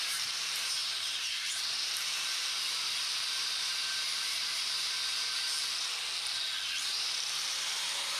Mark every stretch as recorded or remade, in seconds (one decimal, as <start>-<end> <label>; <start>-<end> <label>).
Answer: 0.0-5.0 remade; 5.0-6.8 recorded; 6.8-8.2 remade